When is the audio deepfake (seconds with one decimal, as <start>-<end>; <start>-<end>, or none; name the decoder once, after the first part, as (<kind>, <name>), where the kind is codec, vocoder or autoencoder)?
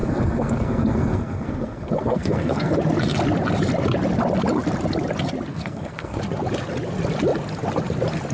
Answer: 0.0-2.8 (codec, SNAC); 5.5-6.2